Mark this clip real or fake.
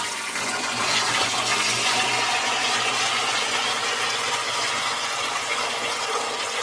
fake